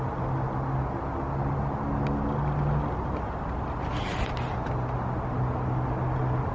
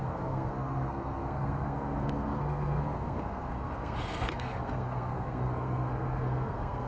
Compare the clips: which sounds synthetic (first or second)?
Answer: second